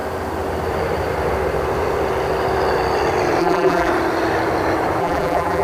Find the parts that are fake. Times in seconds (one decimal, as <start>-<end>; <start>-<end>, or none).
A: 3.4-3.9; 5.0-5.6